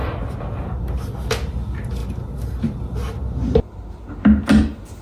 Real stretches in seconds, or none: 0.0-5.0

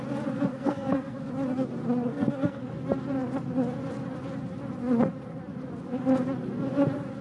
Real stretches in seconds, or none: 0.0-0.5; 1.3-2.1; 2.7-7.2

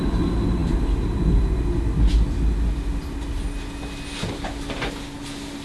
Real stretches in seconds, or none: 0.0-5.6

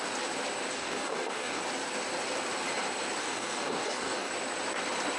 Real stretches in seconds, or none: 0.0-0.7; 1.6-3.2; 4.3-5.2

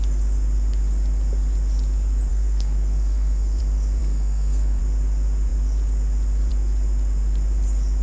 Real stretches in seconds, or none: 0.0-2.3; 3.6-4.0; 4.8-8.0

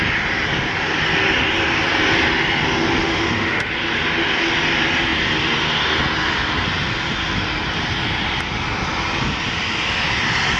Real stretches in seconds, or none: 0.0-3.0; 3.7-10.6

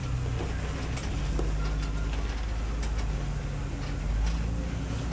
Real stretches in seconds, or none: 1.1-5.1

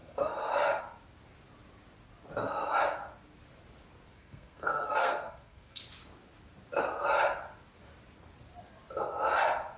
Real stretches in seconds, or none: 0.8-4.1; 5.8-9.8